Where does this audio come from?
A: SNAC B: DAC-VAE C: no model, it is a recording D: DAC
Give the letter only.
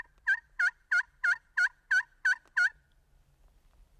C